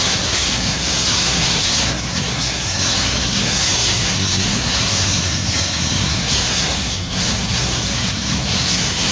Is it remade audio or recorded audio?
remade